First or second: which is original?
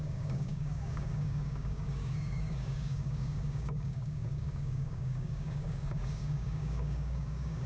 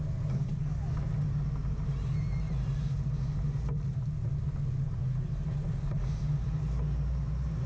second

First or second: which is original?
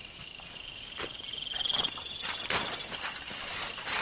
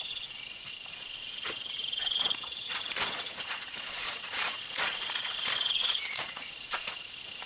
first